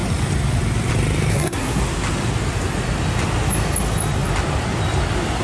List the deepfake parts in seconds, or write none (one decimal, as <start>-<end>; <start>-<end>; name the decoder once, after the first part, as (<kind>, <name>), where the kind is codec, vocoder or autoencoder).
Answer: 1.3-1.8 (codec, SNAC)